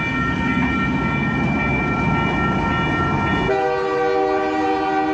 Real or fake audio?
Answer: real